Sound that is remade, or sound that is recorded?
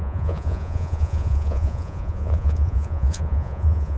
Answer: remade